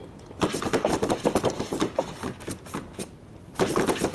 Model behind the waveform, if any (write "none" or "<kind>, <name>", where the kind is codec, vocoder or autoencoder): none